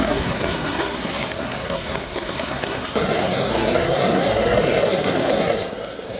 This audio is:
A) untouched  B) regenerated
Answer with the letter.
B